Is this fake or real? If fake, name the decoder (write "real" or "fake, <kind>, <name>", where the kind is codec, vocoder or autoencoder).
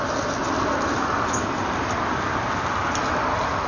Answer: real